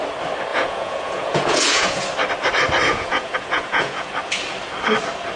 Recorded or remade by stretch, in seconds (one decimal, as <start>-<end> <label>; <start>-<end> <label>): 0.0-0.5 recorded; 0.5-2.0 remade; 2.0-2.9 recorded; 2.9-4.1 remade; 4.1-5.4 recorded